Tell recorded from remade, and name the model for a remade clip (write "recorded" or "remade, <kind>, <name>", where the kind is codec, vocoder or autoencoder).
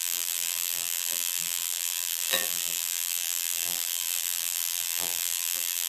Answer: remade, vocoder, BigVGAN v2